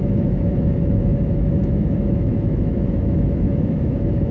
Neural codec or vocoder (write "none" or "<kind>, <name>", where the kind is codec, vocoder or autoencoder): autoencoder, DAC-VAE